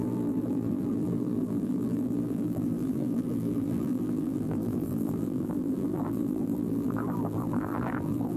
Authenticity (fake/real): fake